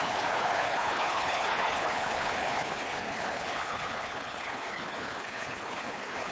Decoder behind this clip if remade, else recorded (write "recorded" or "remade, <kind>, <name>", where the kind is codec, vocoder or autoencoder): remade, codec, HILCodec